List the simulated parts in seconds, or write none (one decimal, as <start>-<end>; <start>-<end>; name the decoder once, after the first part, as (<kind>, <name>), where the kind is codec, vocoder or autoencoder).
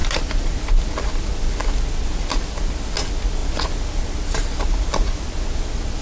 none